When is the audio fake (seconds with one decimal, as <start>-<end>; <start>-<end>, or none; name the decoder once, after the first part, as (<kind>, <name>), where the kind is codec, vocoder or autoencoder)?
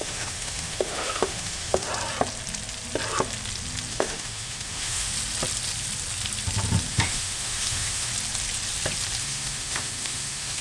0.0-1.9 (autoencoder, DAC-VAE); 3.9-5.1; 6.9-8.1; 9.2-10.6